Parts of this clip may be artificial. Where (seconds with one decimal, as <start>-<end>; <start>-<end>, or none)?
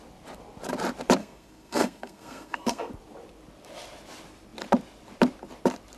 1.2-2.9